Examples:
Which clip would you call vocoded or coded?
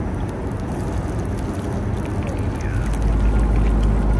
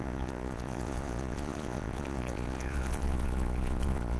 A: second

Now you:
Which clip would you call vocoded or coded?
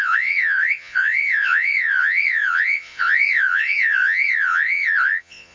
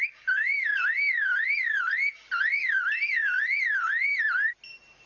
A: first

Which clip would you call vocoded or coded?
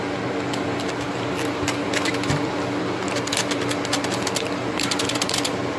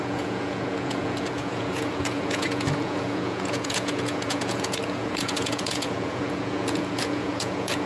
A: second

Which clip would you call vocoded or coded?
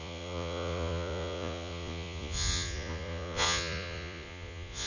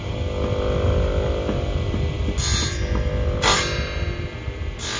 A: first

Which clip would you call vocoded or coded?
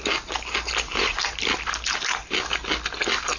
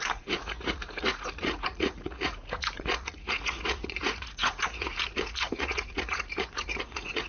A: second